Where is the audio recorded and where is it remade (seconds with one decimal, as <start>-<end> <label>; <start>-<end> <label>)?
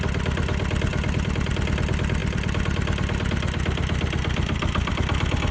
0.0-5.5 recorded